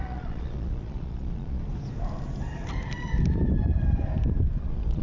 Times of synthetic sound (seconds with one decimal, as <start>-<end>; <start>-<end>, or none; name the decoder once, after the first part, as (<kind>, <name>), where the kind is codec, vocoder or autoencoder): 0.0-1.6 (vocoder, Vocos); 4.6-5.0